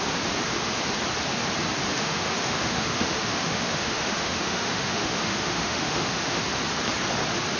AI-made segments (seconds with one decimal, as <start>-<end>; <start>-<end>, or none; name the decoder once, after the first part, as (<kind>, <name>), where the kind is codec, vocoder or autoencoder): 1.9-6.4 (autoencoder, DAC-VAE)